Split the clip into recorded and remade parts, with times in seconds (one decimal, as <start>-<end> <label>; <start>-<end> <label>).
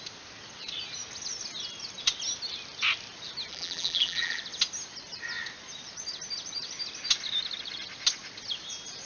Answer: 0.0-3.5 recorded; 3.5-4.4 remade; 4.4-9.1 recorded